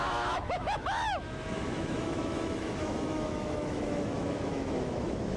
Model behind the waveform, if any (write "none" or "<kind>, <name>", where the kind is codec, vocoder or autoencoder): autoencoder, DAC-VAE